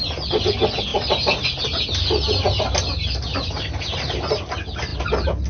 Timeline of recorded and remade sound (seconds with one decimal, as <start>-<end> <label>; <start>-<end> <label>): 0.0-5.5 recorded